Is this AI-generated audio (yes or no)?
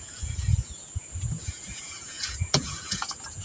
yes